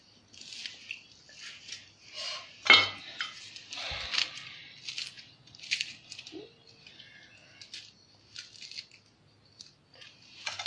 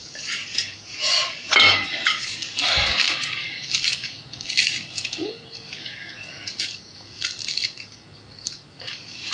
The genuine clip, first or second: first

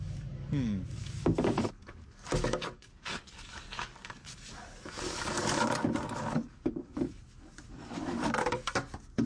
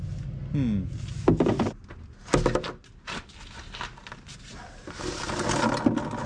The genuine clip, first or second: second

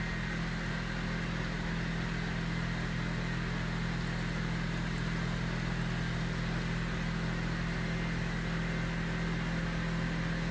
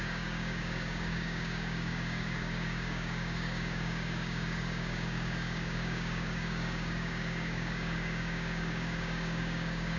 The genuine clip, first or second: first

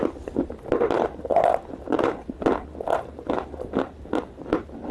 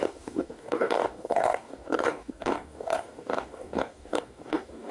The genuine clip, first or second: first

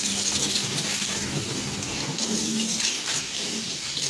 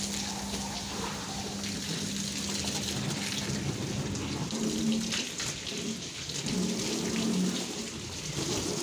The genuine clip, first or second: second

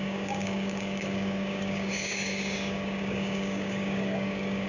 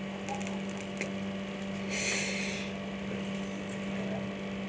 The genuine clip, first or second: second